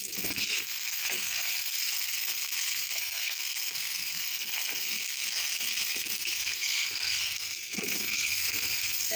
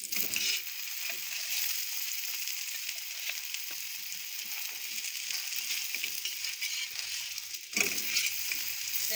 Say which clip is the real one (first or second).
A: second